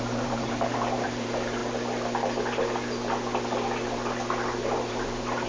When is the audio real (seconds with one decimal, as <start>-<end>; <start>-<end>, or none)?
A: 1.6-4.9